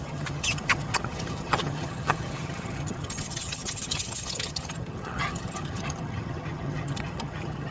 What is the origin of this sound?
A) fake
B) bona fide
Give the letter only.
A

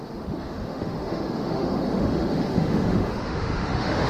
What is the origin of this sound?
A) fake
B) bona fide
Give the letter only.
A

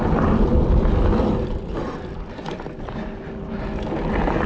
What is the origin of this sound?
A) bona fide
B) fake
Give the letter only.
A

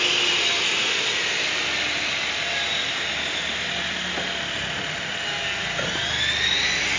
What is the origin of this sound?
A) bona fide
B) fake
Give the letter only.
A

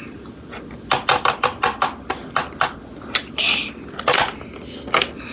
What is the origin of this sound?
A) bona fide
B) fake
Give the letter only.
A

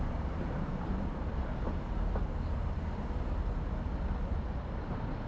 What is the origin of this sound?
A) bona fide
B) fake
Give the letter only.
A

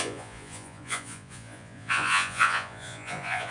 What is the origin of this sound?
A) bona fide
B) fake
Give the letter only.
B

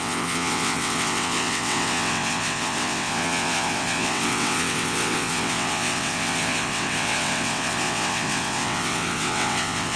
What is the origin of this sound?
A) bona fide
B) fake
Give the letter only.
B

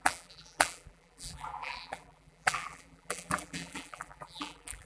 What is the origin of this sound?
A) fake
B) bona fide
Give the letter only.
A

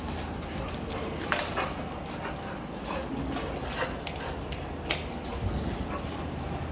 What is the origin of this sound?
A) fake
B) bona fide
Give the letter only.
B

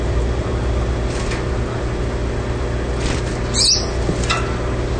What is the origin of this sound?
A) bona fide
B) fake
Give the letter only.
A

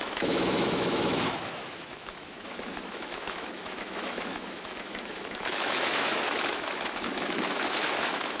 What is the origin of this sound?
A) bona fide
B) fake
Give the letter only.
B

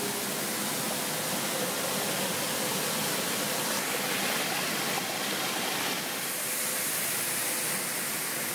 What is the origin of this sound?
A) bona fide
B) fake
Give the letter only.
A